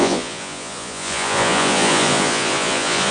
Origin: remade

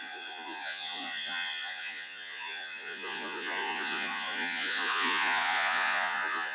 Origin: remade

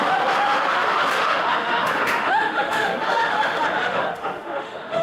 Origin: remade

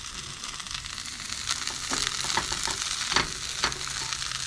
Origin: recorded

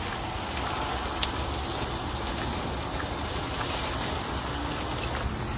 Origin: recorded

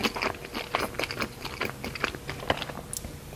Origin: recorded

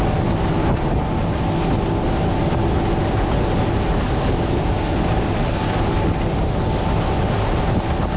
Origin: recorded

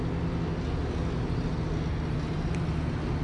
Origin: recorded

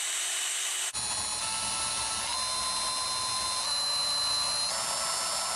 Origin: recorded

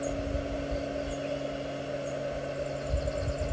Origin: recorded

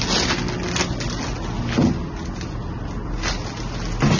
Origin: recorded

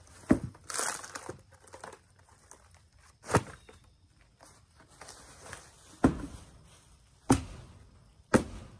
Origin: recorded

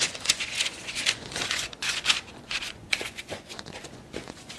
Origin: remade